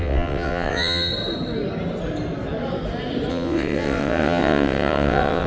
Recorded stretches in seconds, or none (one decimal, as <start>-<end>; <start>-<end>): 1.1-3.3

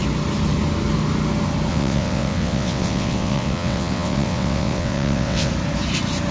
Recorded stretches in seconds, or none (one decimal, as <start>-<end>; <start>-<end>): 0.0-1.7; 5.5-6.3

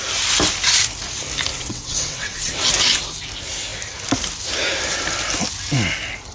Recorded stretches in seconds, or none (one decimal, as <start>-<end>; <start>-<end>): 0.0-1.5; 2.7-6.3

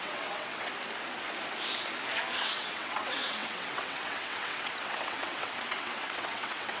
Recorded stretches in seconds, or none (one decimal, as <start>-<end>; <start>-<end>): 0.7-2.4

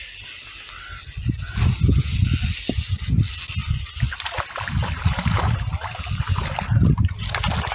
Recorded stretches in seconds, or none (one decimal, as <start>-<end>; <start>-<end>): 0.0-7.7